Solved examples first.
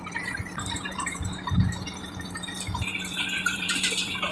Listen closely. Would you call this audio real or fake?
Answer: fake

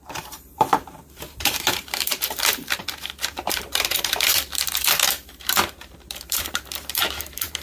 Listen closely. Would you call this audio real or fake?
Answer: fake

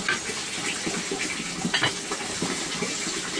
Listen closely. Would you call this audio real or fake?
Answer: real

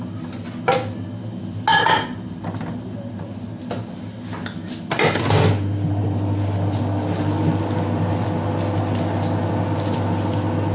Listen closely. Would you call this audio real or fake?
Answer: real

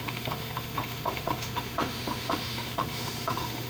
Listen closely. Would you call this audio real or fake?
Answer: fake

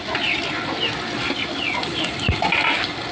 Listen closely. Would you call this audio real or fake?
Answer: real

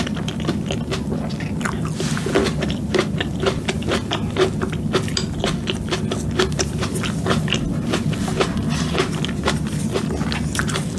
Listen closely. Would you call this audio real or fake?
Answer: real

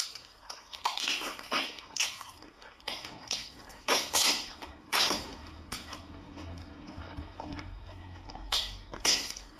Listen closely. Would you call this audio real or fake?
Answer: fake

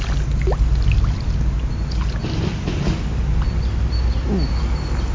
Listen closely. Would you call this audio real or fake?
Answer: real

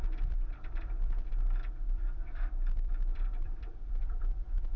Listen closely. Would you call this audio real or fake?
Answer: fake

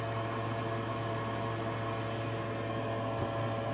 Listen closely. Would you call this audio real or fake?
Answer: real